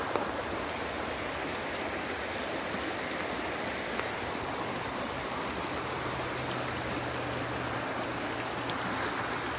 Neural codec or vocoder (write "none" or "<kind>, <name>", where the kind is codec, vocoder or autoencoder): none